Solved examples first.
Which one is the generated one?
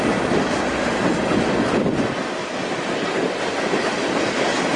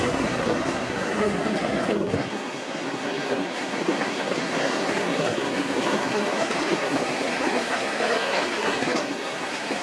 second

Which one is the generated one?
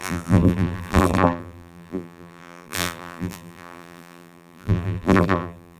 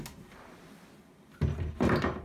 first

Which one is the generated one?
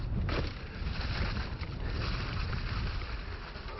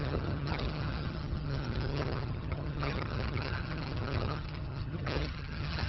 second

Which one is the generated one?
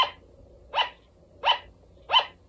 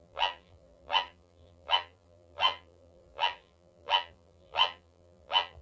second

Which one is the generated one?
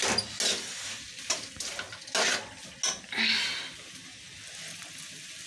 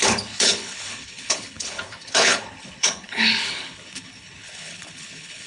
second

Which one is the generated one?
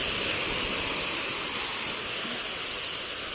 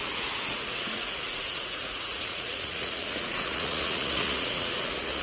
second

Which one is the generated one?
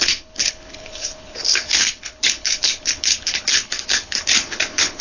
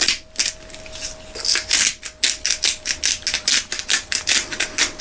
first